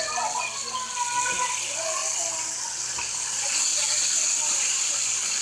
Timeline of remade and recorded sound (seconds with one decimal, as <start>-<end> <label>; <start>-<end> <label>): 0.0-5.4 recorded